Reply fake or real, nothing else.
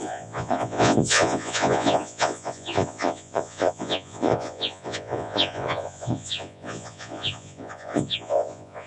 fake